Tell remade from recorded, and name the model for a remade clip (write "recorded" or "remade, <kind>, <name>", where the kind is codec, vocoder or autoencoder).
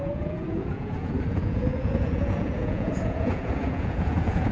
remade, vocoder, Vocos